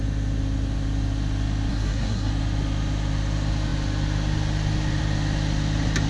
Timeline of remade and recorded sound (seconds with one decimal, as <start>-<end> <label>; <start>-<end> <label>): 0.0-1.7 recorded; 1.7-2.3 remade; 2.3-6.1 recorded